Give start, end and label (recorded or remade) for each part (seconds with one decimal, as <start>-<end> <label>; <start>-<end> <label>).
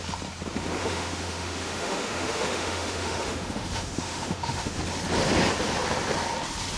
0.0-0.8 recorded; 0.8-4.8 remade; 4.8-6.8 recorded